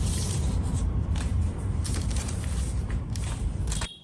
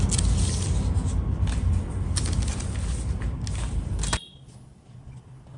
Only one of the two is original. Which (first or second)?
second